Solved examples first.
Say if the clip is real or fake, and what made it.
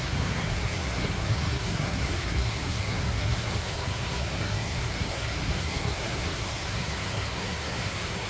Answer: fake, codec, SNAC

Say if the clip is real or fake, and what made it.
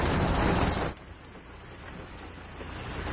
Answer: real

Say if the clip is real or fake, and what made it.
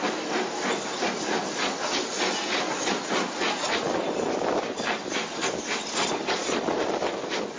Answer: real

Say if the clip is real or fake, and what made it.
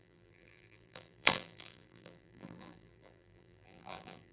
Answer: fake, vocoder, BigVGAN v2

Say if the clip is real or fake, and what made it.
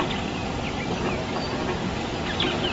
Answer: real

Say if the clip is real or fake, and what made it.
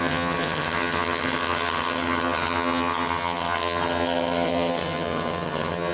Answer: fake, vocoder, HiFi-GAN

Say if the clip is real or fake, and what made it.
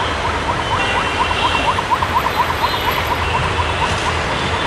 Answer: real